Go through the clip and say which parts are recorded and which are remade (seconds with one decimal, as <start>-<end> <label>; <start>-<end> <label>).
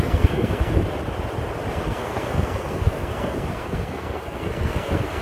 0.0-0.8 remade; 0.8-1.7 recorded; 1.7-5.2 remade